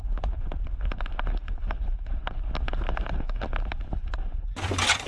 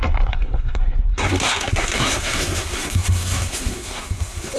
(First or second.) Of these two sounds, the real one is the first